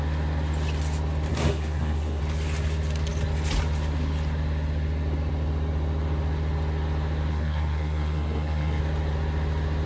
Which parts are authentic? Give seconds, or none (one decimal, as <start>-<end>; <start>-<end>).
0.0-1.3; 2.2-7.3; 8.8-9.9